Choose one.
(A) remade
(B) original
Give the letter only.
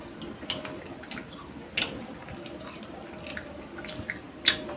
B